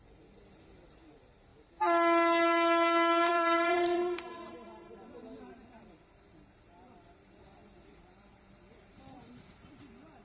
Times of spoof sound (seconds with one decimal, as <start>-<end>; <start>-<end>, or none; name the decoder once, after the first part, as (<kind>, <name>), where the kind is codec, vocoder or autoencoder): 0.0-1.5 (vocoder, BigVGAN v2); 3.3-10.2